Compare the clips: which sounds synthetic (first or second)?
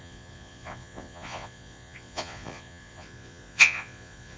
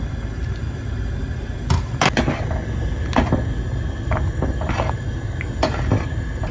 first